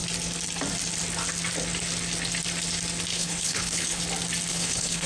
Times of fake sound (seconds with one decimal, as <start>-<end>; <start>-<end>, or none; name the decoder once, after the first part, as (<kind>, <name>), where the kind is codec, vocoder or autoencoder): 3.1-4.0 (codec, HILCodec); 4.5-5.1